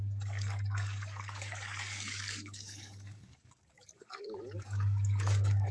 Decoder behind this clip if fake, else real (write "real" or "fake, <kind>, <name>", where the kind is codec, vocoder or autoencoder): fake, codec, DAC